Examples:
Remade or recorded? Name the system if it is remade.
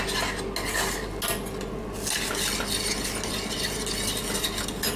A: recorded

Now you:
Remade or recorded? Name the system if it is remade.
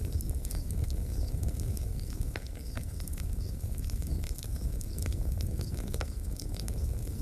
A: remade, codec, SNAC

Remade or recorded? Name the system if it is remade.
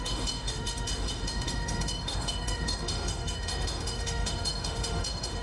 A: remade, autoencoder, DAC-VAE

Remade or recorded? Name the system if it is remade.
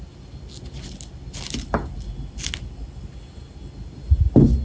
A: recorded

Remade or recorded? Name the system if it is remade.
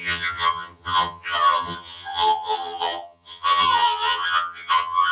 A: remade, vocoder, HiFi-GAN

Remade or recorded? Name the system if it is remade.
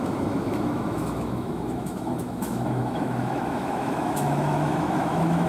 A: remade, autoencoder, DAC-VAE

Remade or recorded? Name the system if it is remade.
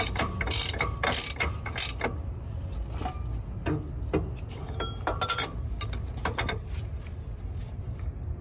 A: recorded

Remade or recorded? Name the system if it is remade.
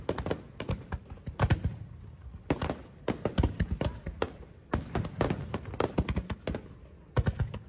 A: recorded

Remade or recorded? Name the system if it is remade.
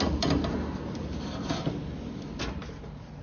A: recorded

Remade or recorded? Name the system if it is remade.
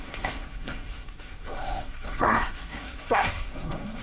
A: remade, codec, SNAC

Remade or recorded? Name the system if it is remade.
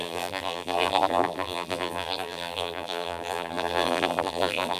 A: remade, vocoder, BigVGAN v2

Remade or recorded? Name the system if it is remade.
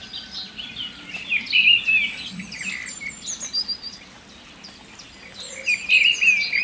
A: recorded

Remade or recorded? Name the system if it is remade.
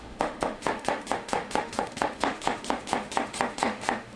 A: remade, autoencoder, DAC-VAE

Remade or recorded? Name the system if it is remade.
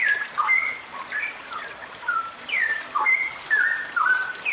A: remade, vocoder, BigVGAN v2